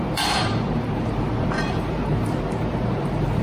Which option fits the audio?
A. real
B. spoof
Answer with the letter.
B